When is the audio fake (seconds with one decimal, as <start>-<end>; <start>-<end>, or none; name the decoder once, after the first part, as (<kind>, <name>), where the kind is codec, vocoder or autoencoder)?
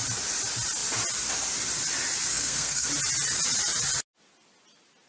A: 2.3-2.9 (codec, SNAC)